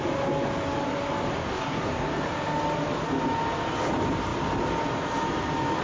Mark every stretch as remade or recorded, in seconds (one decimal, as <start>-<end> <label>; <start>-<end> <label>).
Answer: 0.0-1.4 recorded; 1.4-2.1 remade; 2.1-5.8 recorded